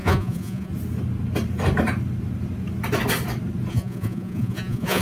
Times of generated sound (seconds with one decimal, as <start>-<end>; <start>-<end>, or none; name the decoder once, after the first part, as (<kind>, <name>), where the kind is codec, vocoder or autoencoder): 0.0-0.7 (vocoder, Vocos); 3.7-5.0